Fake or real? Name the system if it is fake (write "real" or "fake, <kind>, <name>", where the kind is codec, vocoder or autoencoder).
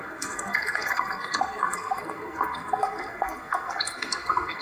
fake, codec, SNAC